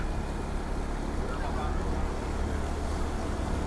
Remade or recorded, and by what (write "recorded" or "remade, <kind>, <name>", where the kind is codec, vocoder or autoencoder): recorded